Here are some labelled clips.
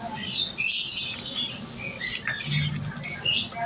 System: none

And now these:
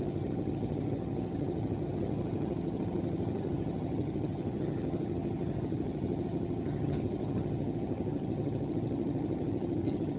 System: vocoder, HiFi-GAN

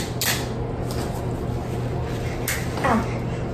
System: none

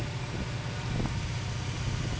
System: none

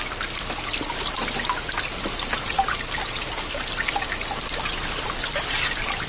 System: none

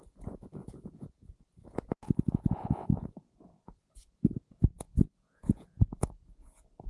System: vocoder, Vocos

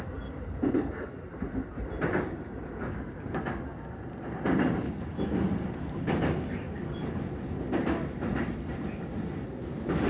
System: none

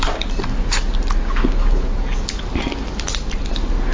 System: none